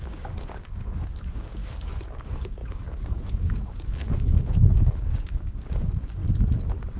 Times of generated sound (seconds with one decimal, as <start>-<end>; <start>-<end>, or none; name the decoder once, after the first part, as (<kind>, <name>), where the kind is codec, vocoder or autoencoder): 0.0-6.2 (codec, DAC)